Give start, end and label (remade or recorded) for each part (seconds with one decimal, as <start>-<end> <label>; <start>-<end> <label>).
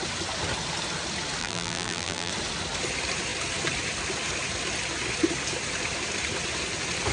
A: 0.0-1.4 recorded; 1.4-2.3 remade; 2.3-7.1 recorded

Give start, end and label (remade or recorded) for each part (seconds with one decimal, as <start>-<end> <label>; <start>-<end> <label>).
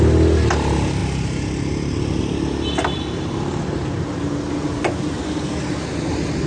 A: 0.0-6.5 recorded